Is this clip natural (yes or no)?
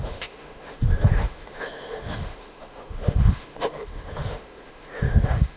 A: no